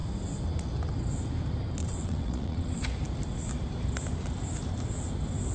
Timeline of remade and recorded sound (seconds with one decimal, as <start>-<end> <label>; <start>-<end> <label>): 0.0-1.8 recorded; 1.8-2.8 remade; 2.8-5.5 recorded